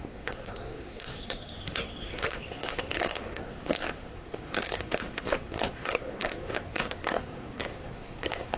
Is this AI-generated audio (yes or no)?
yes